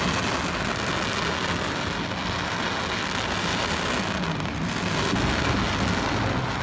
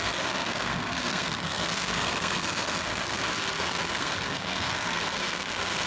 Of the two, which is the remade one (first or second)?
second